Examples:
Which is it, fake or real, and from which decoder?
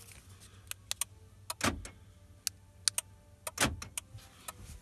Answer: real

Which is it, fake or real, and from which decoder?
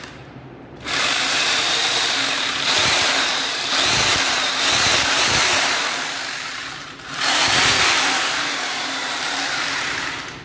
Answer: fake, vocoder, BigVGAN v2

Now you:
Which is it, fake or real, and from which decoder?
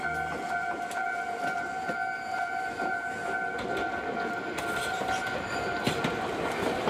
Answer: real